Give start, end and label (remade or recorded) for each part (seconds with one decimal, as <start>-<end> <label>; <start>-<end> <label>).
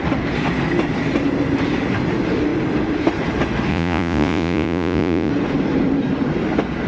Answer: 0.0-3.7 recorded; 3.7-5.3 remade; 5.3-6.9 recorded